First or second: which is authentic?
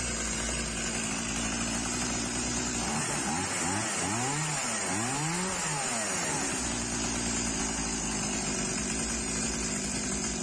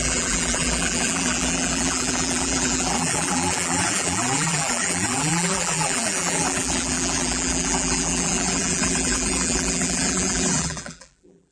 first